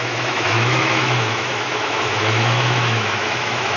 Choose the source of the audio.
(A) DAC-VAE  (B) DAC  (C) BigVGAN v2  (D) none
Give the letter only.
A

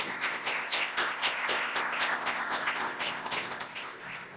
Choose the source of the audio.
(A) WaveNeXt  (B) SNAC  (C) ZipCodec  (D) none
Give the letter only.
C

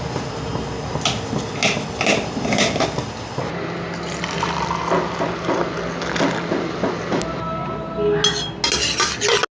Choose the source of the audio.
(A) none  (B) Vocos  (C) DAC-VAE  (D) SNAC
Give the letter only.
A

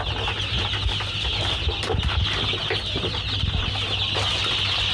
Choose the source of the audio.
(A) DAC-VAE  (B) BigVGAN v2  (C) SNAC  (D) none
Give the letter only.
D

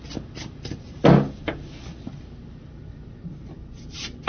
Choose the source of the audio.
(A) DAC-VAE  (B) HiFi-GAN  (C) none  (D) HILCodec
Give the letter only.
C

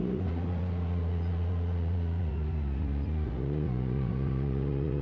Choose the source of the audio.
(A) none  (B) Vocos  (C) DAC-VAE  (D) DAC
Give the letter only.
B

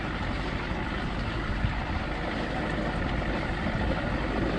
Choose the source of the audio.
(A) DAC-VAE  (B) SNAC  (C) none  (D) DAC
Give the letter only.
C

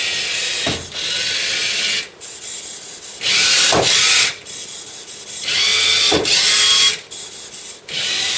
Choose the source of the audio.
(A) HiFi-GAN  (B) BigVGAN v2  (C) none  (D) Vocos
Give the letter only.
C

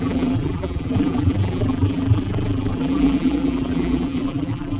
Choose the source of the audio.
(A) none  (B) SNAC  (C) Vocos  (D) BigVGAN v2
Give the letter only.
D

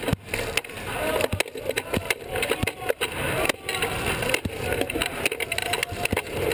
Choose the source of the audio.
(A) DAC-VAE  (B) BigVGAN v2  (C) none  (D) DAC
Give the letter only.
C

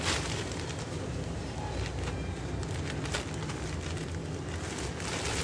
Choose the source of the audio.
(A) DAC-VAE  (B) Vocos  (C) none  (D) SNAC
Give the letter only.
C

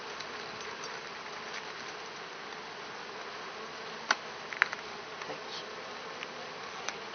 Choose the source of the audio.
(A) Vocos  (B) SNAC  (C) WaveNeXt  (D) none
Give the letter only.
D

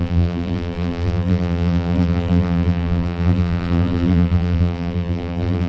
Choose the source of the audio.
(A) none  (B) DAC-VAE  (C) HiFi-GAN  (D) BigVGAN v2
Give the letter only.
D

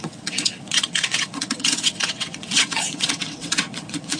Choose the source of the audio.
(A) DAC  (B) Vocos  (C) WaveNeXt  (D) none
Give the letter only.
C